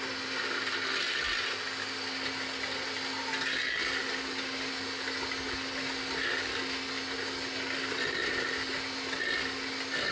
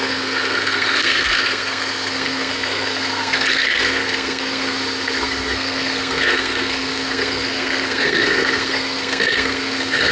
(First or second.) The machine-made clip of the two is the second